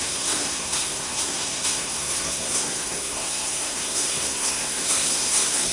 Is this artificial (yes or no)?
yes